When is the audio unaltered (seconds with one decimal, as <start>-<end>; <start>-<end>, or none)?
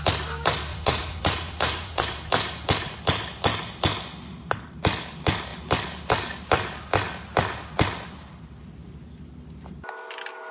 0.0-0.7; 2.0-10.5